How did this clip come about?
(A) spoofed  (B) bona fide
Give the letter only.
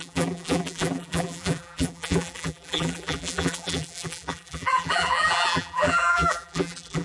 A